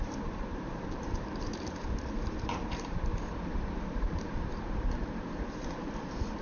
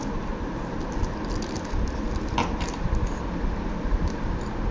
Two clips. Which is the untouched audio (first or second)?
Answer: second